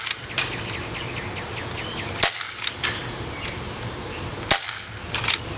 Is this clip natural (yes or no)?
yes